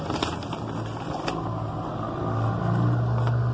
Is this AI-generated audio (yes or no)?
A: no